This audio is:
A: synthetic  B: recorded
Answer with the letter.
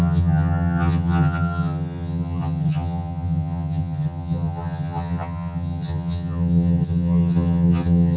A